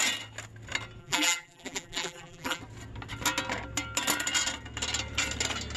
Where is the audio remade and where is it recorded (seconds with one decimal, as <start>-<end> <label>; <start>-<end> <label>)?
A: 0.0-1.0 recorded; 1.0-2.6 remade; 2.6-5.8 recorded